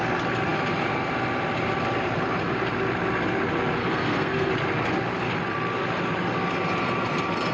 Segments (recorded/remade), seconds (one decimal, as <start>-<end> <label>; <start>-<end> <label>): 0.0-3.8 recorded; 3.8-4.5 remade; 4.5-7.5 recorded